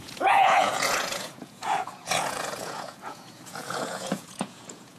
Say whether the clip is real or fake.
fake